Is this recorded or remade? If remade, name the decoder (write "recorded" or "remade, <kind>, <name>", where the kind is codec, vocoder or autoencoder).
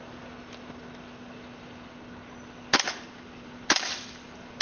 recorded